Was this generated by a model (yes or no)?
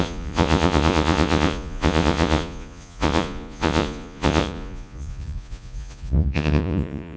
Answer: yes